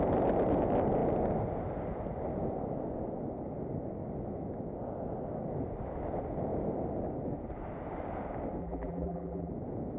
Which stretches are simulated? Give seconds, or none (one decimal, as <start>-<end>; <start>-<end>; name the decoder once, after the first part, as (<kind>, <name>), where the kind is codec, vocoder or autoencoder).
8.6-9.5 (vocoder, BigVGAN v2)